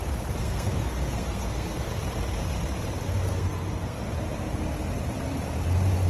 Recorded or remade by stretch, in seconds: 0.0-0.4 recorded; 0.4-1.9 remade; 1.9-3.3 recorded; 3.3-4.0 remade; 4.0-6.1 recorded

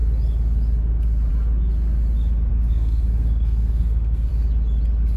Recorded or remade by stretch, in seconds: 0.0-2.5 recorded; 2.5-4.3 remade; 4.3-5.2 recorded

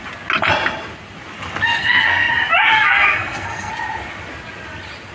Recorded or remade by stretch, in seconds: 0.0-1.7 recorded; 1.7-2.3 remade; 2.3-2.7 recorded; 2.7-3.7 remade; 3.7-5.1 recorded

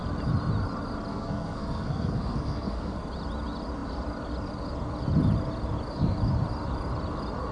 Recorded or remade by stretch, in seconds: 0.0-1.1 recorded; 1.1-3.0 remade; 3.0-7.5 recorded

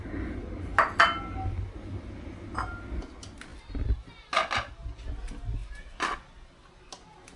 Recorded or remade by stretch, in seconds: 0.0-7.4 recorded

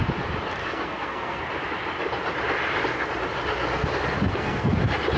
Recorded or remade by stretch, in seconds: 0.0-0.6 recorded; 0.6-1.4 remade; 1.4-4.3 recorded; 4.3-4.8 remade; 4.8-5.2 recorded

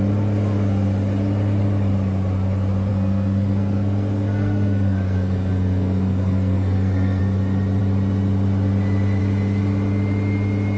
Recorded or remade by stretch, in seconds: 0.0-2.9 recorded; 2.9-7.2 remade; 7.2-10.8 recorded